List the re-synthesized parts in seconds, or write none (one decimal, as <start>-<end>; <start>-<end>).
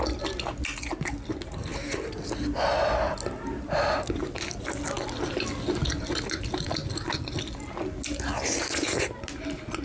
none